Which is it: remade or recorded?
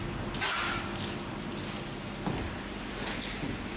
recorded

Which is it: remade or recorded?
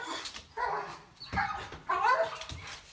remade